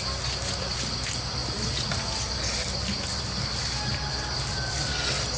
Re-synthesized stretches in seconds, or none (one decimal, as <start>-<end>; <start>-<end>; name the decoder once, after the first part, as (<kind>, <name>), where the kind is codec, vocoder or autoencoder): none